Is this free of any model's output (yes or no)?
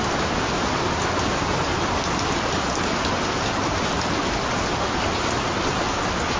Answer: yes